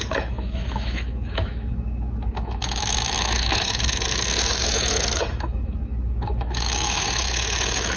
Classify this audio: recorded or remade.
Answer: remade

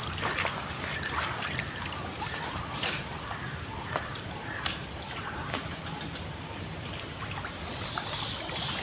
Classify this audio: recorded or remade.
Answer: recorded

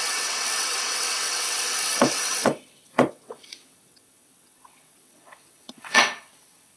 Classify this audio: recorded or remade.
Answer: remade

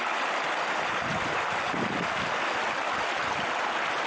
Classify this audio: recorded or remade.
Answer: recorded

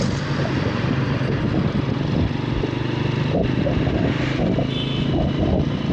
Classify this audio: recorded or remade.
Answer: recorded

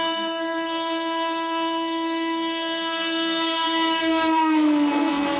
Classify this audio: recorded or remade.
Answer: remade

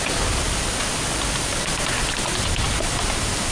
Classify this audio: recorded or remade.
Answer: recorded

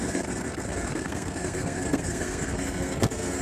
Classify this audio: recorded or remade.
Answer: remade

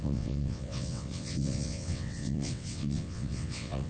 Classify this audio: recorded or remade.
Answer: remade